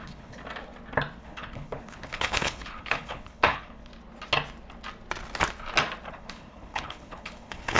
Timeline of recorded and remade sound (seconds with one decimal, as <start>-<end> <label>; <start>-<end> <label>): 0.0-0.4 remade; 0.4-1.2 recorded; 1.2-3.9 remade; 3.9-6.1 recorded; 6.1-7.8 remade